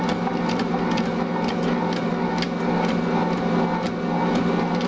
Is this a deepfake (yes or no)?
no